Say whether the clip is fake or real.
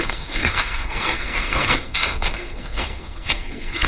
fake